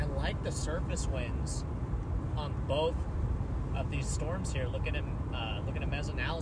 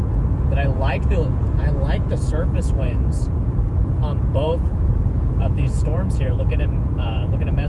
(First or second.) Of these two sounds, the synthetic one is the second